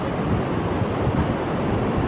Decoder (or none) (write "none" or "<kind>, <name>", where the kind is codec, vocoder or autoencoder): none